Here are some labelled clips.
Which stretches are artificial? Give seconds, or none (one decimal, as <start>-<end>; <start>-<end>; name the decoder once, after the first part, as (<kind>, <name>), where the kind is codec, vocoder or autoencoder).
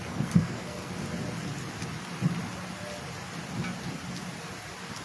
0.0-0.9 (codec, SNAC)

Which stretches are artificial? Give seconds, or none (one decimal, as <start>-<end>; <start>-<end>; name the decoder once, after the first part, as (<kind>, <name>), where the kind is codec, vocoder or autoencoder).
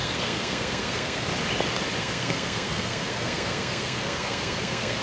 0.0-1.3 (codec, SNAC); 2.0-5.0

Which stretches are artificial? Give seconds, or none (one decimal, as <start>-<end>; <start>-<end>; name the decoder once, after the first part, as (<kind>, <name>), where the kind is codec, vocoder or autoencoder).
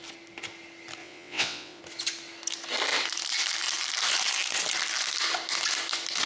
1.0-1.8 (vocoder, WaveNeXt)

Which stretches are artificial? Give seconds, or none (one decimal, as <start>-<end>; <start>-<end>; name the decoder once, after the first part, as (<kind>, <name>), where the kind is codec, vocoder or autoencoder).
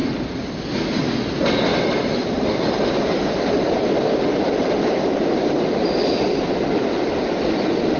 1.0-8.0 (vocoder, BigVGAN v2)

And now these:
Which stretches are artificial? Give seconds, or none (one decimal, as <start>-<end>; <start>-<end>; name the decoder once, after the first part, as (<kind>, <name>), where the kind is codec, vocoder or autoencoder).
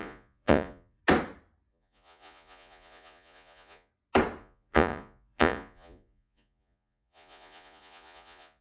0.0-1.0 (vocoder, Vocos); 1.7-3.9; 4.4-8.6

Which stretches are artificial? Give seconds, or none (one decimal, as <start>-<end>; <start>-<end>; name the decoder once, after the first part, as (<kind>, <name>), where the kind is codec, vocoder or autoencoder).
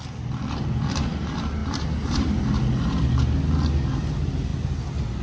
1.6-2.6 (vocoder, BigVGAN v2)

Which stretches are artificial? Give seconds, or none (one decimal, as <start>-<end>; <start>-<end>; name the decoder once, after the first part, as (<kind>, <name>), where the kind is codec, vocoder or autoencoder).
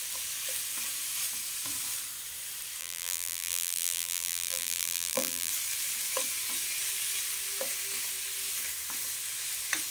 2.8-5.5 (vocoder, BigVGAN v2)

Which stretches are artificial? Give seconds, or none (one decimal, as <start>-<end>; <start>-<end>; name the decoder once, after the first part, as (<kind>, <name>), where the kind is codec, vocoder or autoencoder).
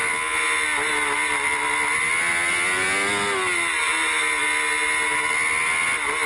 none